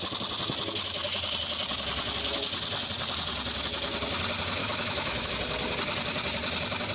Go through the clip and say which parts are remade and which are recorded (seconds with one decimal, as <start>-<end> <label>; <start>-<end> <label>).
0.0-4.6 recorded; 4.6-5.3 remade; 5.3-6.9 recorded